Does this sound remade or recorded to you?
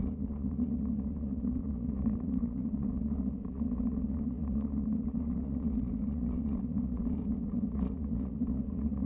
remade